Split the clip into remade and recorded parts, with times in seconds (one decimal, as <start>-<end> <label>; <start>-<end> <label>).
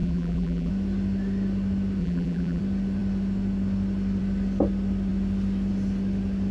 0.0-0.7 remade; 0.7-2.0 recorded; 2.0-2.6 remade; 2.6-6.5 recorded